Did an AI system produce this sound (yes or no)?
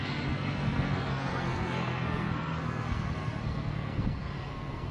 yes